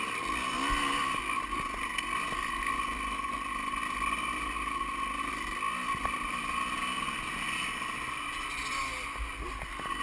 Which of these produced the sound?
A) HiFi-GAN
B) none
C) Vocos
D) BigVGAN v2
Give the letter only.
B